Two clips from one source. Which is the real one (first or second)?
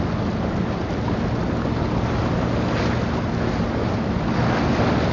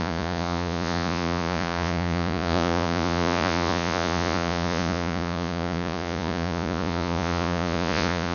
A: first